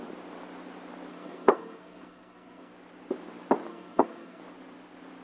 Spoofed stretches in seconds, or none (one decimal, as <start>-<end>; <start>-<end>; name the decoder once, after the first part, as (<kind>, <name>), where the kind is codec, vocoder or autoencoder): 1.1-2.7 (codec, SNAC); 3.7-4.4